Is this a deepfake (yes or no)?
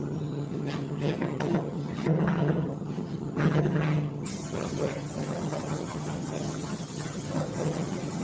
yes